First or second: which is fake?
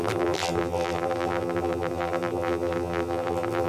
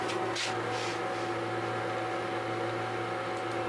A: first